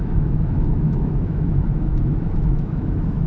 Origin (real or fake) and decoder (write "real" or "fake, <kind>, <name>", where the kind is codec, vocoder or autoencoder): fake, autoencoder, DAC-VAE